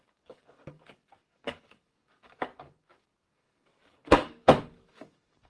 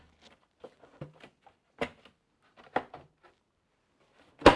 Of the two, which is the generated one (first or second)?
first